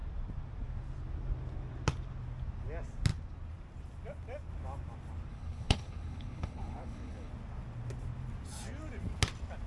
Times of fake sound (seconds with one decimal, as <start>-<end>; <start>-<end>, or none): 5.3-7.3